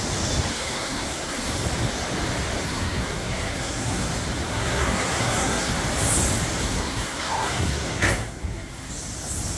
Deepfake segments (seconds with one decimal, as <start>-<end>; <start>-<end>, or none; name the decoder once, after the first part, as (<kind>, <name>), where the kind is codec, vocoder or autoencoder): 0.5-1.5 (codec, SNAC); 2.6-4.1; 4.5-5.7; 6.6-8.9